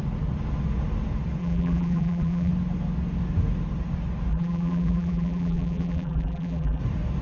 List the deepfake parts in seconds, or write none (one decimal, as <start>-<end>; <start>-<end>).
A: 1.4-2.5; 4.3-6.8